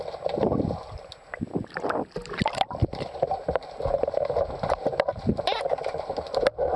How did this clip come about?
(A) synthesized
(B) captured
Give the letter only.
B